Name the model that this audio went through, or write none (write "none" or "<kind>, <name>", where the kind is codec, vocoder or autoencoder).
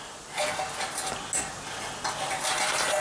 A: none